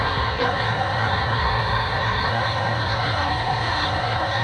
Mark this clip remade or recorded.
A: remade